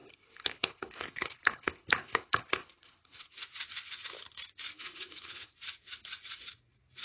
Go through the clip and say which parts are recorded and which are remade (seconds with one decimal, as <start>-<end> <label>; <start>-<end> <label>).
0.0-3.3 remade; 3.3-4.7 recorded; 4.7-5.5 remade; 5.5-7.0 recorded